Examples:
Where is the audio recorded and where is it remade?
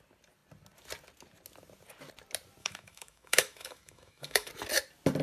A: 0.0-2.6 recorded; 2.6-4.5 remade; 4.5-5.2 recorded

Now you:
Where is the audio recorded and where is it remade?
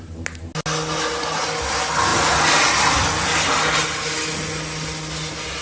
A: 0.0-5.6 recorded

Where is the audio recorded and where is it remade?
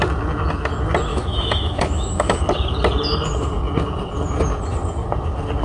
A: 0.0-1.1 recorded; 1.1-2.4 remade; 2.4-5.6 recorded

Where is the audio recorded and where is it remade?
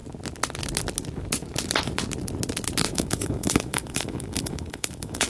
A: 0.0-2.9 recorded; 2.9-5.3 remade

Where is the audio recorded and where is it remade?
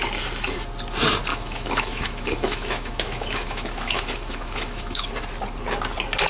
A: 0.0-1.3 recorded; 1.3-5.1 remade; 5.1-6.3 recorded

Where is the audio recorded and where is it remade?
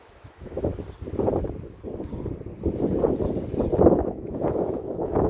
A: 0.0-0.7 remade; 0.7-3.8 recorded; 3.8-5.3 remade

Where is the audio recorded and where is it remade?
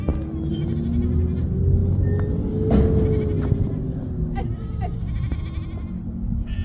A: 0.0-6.6 recorded